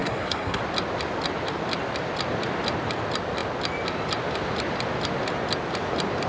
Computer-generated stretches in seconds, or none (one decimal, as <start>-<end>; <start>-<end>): 0.0-0.6

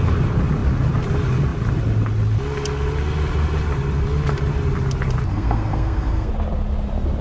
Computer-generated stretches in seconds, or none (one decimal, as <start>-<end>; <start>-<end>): 5.3-6.3

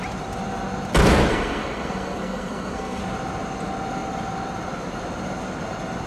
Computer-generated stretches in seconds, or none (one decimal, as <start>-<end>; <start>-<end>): 1.3-3.0

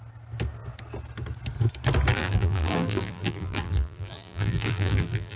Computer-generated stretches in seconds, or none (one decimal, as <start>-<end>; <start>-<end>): 2.1-5.4

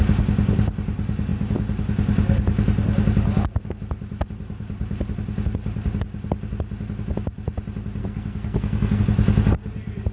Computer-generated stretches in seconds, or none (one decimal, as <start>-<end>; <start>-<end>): 8.0-9.0

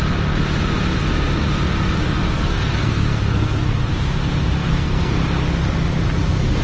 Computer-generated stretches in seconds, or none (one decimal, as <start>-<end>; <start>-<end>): 2.2-3.8; 4.6-5.1

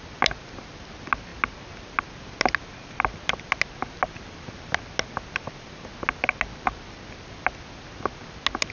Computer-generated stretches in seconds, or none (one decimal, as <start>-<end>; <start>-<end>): none